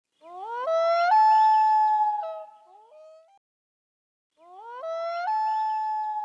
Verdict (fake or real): real